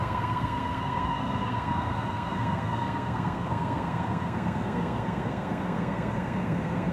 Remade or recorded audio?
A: remade